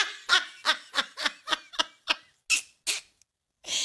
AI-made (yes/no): no